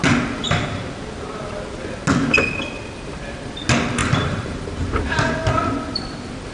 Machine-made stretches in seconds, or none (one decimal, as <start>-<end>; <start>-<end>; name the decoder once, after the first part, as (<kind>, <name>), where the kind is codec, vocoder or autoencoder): 4.0-4.8 (vocoder, BigVGAN v2)